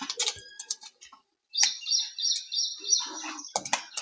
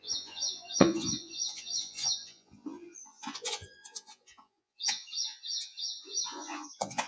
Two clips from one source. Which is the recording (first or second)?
first